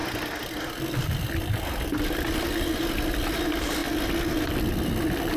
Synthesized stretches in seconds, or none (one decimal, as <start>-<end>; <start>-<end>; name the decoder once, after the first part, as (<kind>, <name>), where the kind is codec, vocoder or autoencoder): none